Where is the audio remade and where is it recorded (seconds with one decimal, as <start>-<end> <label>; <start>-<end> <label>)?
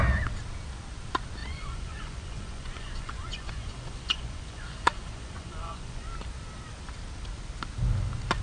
0.0-1.4 recorded; 1.4-6.1 remade; 6.1-8.4 recorded